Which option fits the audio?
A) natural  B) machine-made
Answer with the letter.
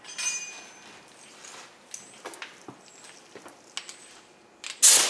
A